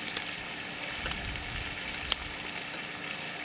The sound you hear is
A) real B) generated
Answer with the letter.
A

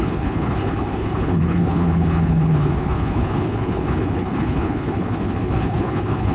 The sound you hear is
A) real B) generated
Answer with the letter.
B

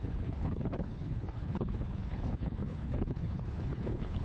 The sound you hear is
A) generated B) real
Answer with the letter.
A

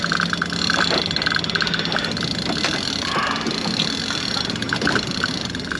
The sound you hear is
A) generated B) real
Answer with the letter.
B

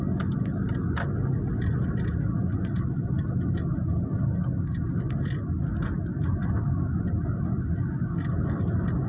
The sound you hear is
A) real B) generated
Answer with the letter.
A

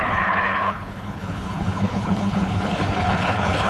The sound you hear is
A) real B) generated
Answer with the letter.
B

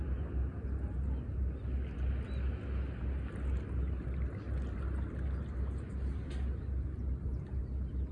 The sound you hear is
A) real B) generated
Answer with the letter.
A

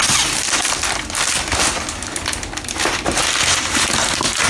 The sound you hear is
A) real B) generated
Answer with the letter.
A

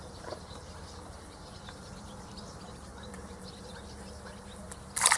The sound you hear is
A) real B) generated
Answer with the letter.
A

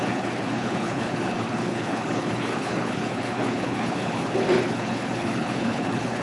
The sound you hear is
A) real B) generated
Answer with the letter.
B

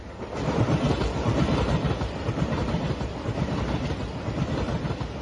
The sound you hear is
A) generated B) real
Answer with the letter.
B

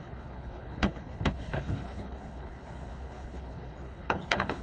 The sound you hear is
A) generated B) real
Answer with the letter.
A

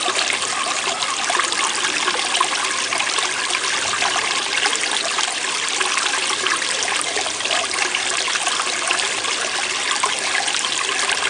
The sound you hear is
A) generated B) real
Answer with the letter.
B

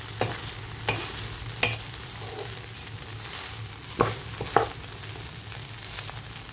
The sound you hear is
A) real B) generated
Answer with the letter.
A